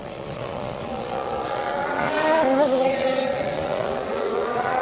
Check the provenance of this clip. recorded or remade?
remade